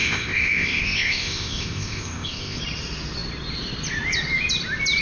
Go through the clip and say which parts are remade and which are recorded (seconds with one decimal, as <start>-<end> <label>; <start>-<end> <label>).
0.0-2.6 remade; 2.6-5.0 recorded